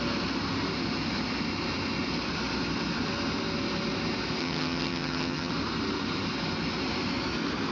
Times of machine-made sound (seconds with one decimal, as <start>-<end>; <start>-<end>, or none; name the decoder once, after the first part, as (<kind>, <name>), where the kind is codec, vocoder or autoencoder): 4.4-5.5 (vocoder, HiFi-GAN)